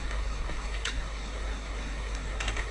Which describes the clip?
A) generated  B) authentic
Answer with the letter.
A